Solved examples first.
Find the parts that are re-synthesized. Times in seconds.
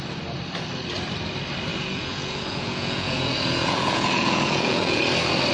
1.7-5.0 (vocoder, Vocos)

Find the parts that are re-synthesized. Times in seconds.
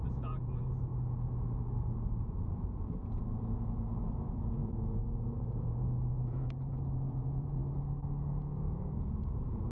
0.0-0.9 (vocoder, Vocos); 2.2-7.6; 9.0-9.7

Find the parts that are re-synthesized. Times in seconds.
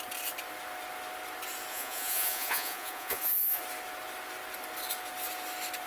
1.7-3.6 (vocoder, Vocos)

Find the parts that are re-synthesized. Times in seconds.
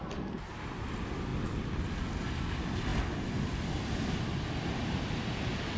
none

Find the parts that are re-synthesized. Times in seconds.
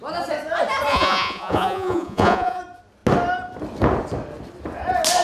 0.9-2.6 (vocoder, Vocos)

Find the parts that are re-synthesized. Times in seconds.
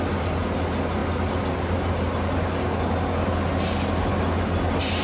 none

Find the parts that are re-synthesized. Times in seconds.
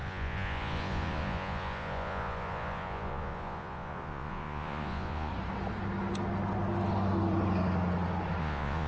0.0-5.3 (vocoder, Vocos); 8.4-8.9